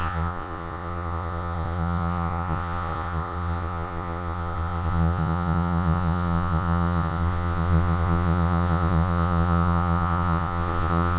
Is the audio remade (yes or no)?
yes